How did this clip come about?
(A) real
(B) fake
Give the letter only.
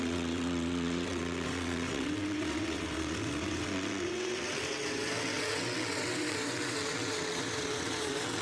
B